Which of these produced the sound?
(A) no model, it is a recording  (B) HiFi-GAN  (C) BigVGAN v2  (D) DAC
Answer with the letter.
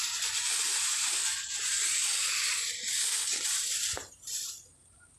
C